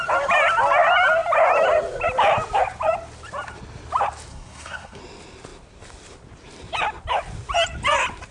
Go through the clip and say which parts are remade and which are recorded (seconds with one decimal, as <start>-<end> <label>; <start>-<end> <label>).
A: 0.0-4.3 recorded; 4.3-5.0 remade; 5.0-8.3 recorded